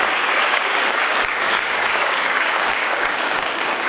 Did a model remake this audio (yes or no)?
yes